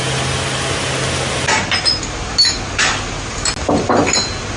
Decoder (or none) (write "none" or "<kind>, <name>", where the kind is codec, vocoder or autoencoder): none